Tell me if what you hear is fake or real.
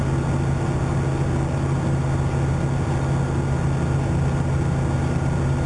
real